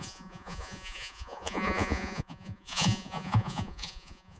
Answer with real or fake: fake